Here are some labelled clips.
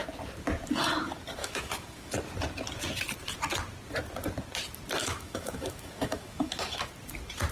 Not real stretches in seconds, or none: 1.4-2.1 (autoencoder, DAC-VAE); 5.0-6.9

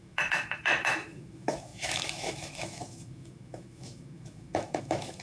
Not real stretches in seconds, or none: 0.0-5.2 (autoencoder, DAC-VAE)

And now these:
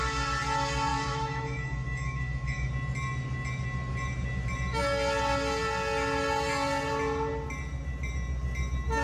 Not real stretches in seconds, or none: 0.9-2.7 (autoencoder, DAC-VAE)

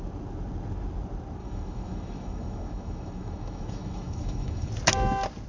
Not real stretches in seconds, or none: 1.4-4.7 (autoencoder, DAC-VAE)

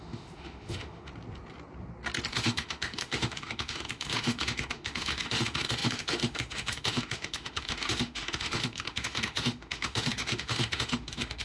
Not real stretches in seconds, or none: 0.0-1.1 (autoencoder, DAC-VAE); 2.3-11.4